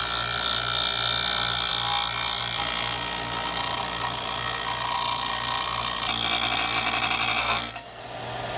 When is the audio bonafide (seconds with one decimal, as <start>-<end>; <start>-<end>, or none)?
0.0-7.4; 8.0-8.6